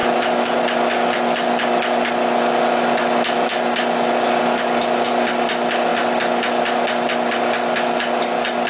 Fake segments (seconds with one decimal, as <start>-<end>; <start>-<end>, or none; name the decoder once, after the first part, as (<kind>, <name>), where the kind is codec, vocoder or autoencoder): none